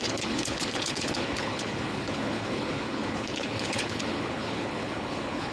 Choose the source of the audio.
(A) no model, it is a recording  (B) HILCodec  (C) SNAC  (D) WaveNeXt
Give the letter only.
B